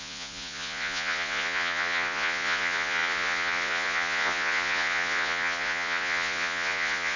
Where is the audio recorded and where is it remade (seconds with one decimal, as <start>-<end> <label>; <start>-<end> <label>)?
0.0-7.2 remade

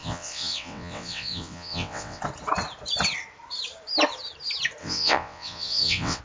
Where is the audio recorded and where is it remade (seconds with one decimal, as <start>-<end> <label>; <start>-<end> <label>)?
0.0-2.2 remade; 2.2-4.8 recorded; 4.8-6.2 remade

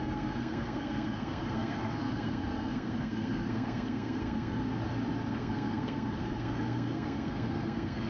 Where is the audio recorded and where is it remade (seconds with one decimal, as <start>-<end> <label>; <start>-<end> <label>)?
0.0-4.8 remade; 4.8-5.3 recorded; 5.3-8.1 remade